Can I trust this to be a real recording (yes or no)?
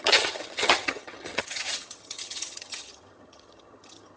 no